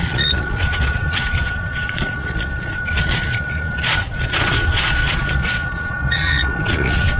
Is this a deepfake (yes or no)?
yes